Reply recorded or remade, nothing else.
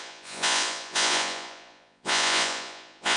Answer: remade